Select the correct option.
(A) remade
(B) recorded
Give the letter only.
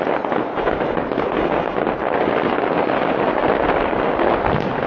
B